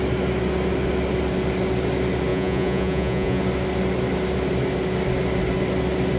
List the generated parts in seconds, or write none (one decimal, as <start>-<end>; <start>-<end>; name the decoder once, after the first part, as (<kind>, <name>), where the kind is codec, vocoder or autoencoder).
2.3-3.4 (vocoder, Vocos)